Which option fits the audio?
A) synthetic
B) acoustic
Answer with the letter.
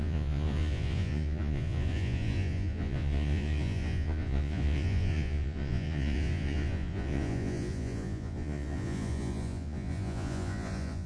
A